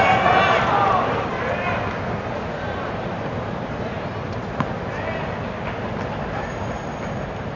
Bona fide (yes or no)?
yes